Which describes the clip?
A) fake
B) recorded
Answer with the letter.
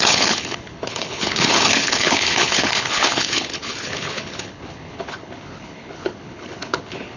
A